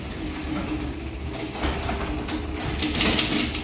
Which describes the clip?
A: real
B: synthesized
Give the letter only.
A